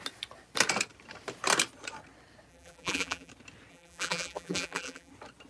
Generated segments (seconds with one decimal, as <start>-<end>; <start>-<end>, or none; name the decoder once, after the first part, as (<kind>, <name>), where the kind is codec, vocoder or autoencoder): 2.5-3.3 (vocoder, BigVGAN v2); 3.7-5.1